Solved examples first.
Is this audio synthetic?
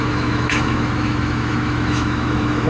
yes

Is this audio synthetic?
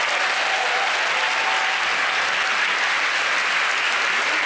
no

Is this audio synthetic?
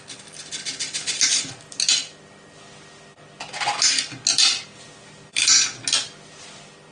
no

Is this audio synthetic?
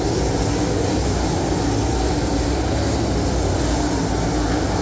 no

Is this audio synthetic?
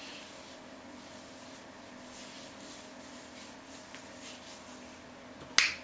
no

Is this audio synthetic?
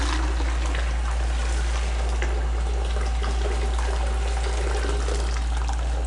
no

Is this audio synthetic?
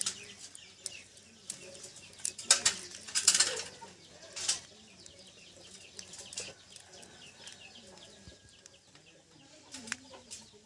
no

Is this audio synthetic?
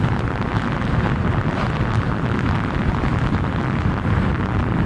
no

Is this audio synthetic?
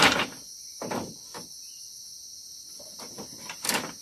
no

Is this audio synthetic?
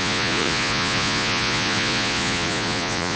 yes